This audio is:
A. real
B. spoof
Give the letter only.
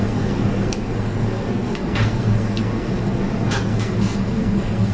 B